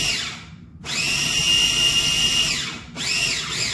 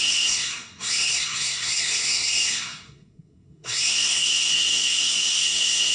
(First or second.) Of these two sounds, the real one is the first